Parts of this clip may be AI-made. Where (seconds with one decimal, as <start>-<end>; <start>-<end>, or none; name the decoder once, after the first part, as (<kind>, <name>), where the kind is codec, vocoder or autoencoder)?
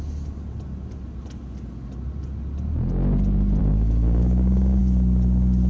3.6-4.8 (codec, DAC)